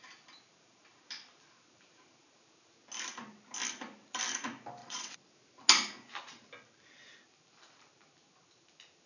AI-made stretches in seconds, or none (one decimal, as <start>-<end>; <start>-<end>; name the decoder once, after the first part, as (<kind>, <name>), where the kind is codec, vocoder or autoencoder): 4.8-5.3 (vocoder, WaveNeXt)